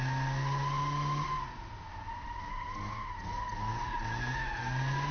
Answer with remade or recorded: recorded